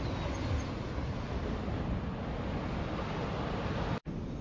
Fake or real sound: real